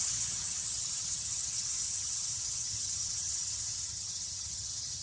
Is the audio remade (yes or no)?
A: yes